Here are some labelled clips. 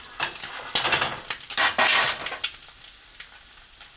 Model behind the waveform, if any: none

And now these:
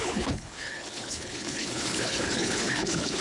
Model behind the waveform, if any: codec, HILCodec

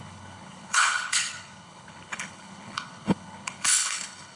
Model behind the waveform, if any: codec, HILCodec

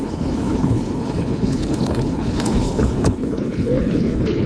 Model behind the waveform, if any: codec, HILCodec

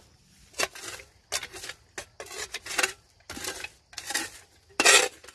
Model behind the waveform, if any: none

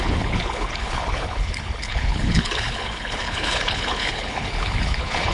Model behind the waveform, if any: codec, HILCodec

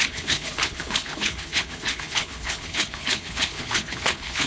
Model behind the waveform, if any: codec, HILCodec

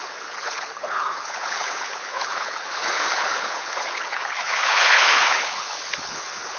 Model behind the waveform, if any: codec, HILCodec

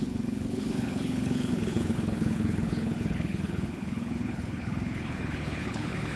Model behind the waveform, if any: codec, HILCodec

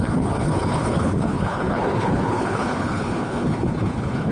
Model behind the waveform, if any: codec, HILCodec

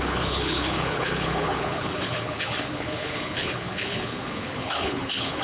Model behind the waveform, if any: codec, HILCodec